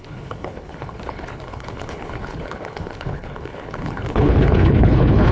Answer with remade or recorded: remade